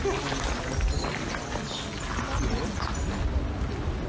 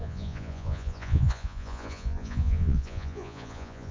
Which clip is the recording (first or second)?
first